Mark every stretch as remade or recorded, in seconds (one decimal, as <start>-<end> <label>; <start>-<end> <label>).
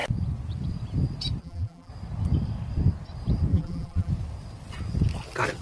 0.0-1.4 recorded; 1.4-1.9 remade; 1.9-3.5 recorded; 3.5-4.1 remade; 4.1-5.6 recorded